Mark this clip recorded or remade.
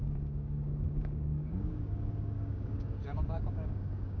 remade